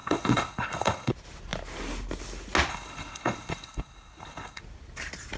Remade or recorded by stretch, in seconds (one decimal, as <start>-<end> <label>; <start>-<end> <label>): 0.0-1.1 remade; 1.1-2.7 recorded; 2.7-4.6 remade; 4.6-5.4 recorded